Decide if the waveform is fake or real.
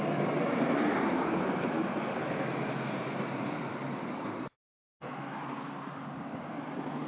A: real